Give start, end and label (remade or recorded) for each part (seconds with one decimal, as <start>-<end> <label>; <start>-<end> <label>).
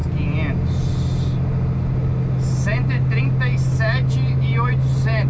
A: 0.0-5.3 recorded